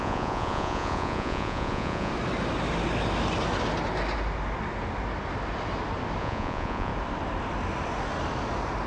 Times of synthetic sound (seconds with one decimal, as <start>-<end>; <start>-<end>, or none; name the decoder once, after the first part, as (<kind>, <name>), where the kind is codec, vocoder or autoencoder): 0.0-2.1 (vocoder, Vocos); 6.2-6.9